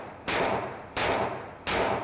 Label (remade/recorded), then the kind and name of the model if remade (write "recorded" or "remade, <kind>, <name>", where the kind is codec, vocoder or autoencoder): recorded